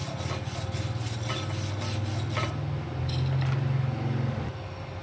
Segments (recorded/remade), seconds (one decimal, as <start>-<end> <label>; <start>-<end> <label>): 0.0-5.0 recorded